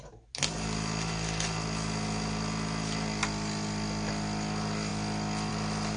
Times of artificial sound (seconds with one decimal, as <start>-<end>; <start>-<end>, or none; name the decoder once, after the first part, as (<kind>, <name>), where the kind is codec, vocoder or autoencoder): none